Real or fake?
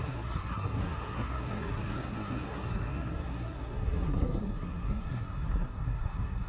fake